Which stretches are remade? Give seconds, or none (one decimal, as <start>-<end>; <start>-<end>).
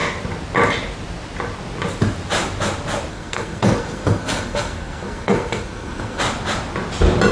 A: 3.1-6.2